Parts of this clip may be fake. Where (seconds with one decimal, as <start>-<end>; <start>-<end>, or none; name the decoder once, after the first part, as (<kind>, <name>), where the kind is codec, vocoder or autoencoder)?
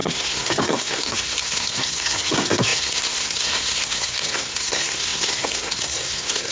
0.0-6.5 (codec, SNAC)